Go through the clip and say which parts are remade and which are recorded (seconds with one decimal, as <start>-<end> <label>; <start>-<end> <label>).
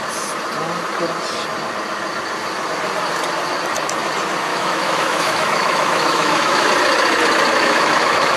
0.0-4.5 recorded; 4.5-6.7 remade; 6.7-7.5 recorded; 7.5-8.4 remade